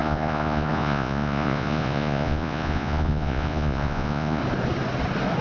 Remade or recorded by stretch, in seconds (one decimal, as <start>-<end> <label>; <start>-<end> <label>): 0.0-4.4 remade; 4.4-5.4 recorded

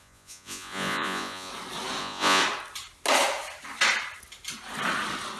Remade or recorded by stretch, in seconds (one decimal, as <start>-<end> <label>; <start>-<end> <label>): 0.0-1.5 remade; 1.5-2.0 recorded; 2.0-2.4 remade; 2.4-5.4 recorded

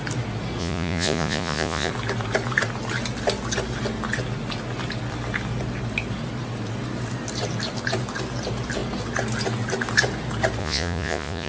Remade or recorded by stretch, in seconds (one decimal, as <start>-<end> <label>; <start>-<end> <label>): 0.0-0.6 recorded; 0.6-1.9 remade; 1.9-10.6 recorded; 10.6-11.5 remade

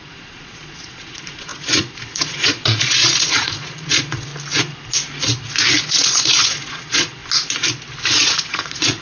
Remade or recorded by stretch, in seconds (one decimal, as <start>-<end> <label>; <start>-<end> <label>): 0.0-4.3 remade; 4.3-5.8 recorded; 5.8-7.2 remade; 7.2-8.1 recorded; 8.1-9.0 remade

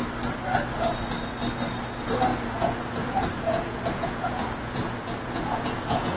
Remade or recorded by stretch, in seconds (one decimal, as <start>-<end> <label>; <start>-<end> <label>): 0.0-2.3 recorded; 2.3-6.2 remade

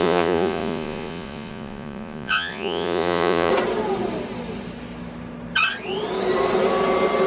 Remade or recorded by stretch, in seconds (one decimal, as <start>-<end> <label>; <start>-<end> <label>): 0.0-3.5 remade; 3.5-7.3 recorded